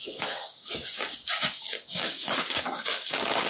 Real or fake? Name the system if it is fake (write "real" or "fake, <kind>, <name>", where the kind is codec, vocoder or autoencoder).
fake, codec, DAC